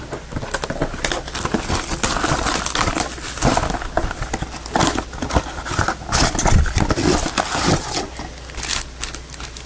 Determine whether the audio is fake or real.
real